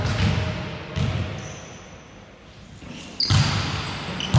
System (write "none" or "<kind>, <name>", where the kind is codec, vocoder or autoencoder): none